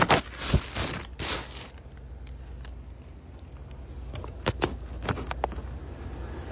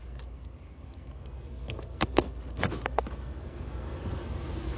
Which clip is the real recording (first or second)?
first